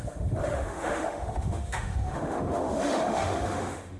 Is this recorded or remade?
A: remade